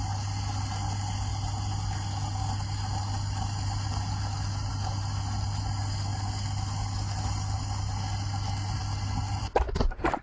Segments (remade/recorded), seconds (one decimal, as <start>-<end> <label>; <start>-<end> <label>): 0.0-10.2 recorded